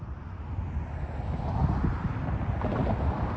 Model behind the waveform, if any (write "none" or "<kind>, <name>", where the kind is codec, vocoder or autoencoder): none